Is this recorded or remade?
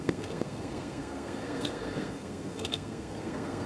remade